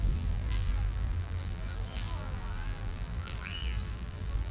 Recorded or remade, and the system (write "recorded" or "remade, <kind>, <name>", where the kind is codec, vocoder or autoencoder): remade, vocoder, BigVGAN v2